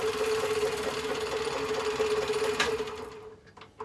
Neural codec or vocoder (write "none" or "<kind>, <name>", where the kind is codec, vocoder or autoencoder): none